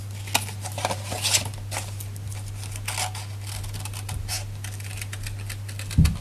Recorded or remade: recorded